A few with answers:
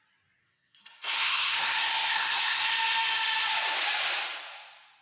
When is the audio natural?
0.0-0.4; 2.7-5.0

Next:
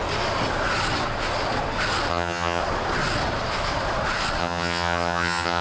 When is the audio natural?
0.0-2.1; 2.6-4.4